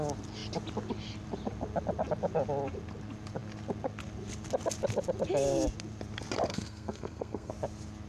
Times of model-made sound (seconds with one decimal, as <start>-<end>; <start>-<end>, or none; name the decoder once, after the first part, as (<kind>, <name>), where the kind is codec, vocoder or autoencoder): 6.5-7.5 (codec, SNAC)